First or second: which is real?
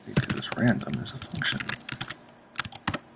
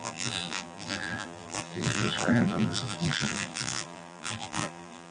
first